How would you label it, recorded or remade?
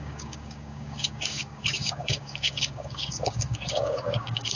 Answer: remade